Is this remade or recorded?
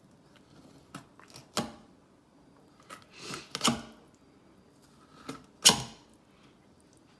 recorded